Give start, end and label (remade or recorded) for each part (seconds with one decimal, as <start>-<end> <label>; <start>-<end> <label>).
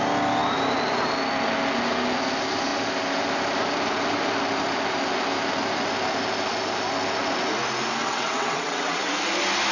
0.0-8.0 recorded; 8.0-9.1 remade; 9.1-9.7 recorded